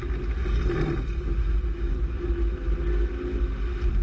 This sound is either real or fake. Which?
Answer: real